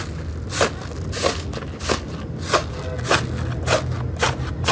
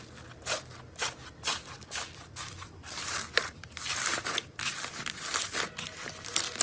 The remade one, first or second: second